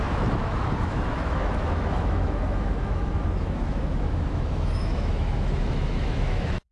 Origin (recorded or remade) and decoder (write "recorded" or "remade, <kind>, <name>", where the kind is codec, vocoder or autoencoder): remade, autoencoder, DAC-VAE